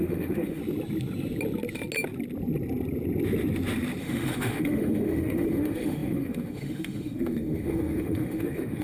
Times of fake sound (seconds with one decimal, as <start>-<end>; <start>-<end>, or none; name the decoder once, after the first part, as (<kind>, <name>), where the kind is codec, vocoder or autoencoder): 0.0-0.6 (autoencoder, DAC-VAE); 4.0-8.8

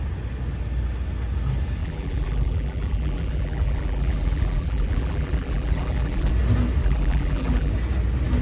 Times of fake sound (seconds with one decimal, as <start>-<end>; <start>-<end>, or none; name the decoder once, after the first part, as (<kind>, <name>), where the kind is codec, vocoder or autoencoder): 1.8-6.3 (vocoder, BigVGAN v2); 6.8-7.7

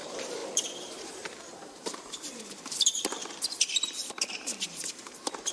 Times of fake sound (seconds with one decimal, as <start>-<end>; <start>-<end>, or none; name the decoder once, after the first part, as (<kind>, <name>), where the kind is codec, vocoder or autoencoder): 0.0-3.2 (vocoder, BigVGAN v2); 4.1-5.5

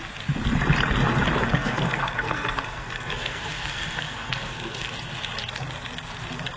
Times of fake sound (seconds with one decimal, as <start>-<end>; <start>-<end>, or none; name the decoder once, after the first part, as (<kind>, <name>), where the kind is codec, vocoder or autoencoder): 1.4-4.9 (codec, SNAC)

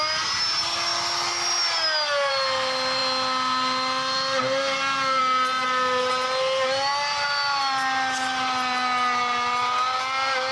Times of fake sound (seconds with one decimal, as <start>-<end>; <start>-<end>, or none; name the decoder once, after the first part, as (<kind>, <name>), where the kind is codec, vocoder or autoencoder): none